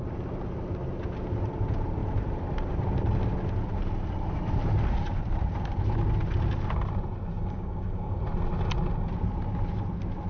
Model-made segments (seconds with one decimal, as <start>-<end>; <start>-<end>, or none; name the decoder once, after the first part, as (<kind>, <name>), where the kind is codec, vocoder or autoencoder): 7.4-8.2 (codec, DAC)